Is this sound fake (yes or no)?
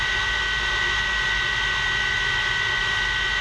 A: no